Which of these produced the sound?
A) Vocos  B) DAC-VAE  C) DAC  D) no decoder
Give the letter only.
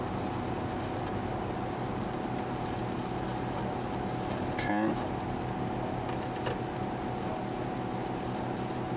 D